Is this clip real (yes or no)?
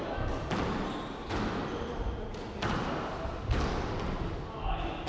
yes